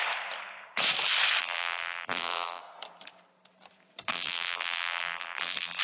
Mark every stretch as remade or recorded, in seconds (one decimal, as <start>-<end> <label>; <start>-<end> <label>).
0.0-1.4 recorded; 1.4-2.6 remade; 2.6-4.1 recorded; 4.1-5.8 remade